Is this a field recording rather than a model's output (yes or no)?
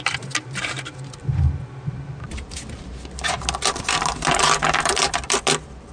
yes